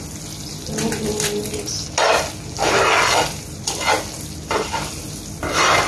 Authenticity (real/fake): real